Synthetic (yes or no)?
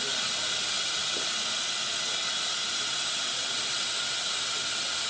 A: no